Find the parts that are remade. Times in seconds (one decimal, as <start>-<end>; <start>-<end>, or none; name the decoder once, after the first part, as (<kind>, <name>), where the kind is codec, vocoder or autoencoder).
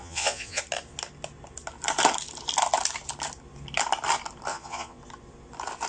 0.0-0.6 (vocoder, Vocos); 4.5-5.0